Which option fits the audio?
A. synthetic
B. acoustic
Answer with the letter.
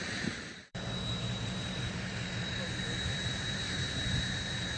A